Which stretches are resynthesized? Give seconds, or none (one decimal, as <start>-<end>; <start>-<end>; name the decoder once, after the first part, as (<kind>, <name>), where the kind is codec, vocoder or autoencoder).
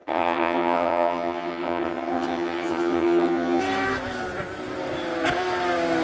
0.0-3.6 (vocoder, HiFi-GAN)